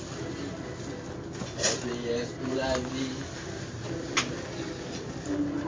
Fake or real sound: real